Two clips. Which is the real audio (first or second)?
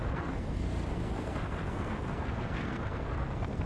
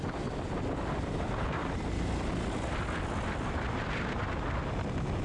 second